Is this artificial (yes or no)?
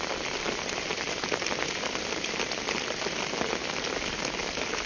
no